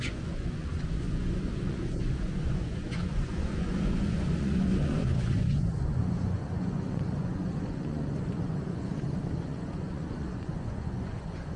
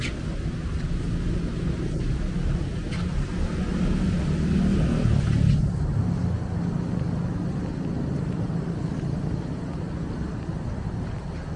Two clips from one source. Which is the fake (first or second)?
first